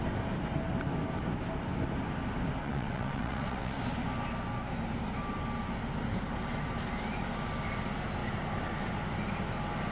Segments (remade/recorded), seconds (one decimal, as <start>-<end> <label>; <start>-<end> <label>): 0.0-2.6 recorded; 2.6-3.8 remade; 3.8-9.9 recorded